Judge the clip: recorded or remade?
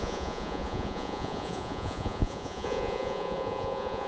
remade